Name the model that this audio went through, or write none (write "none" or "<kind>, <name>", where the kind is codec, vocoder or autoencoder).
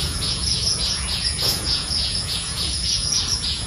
vocoder, Vocos